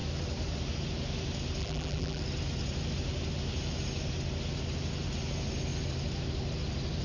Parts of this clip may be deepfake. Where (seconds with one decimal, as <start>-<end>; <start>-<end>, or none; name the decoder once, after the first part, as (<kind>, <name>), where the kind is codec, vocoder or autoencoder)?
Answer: 1.6-2.2 (vocoder, BigVGAN v2)